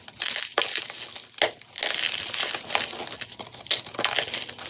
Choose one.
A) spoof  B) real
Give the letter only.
B